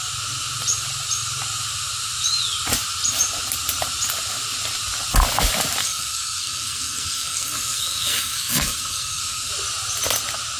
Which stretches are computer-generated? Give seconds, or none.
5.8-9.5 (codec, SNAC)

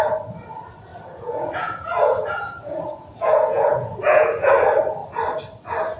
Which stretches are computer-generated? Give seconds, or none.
0.9-4.5 (vocoder, Vocos)

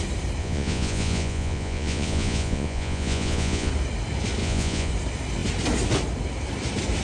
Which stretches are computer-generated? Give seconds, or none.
0.4-3.7 (vocoder, Vocos); 4.4-4.9

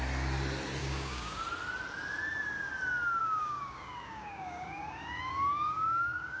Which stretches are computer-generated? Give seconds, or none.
0.8-1.4 (codec, DAC); 3.2-6.4